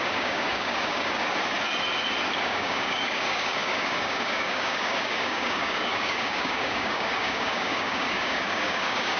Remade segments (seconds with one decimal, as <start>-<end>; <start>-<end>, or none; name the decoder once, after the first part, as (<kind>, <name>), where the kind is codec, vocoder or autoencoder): 0.0-1.2 (codec, DAC); 2.4-9.2